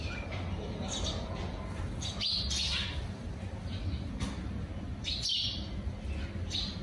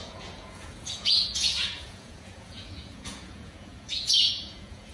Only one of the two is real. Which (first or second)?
first